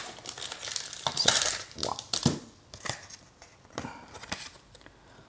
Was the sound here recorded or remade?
recorded